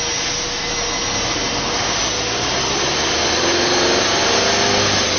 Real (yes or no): yes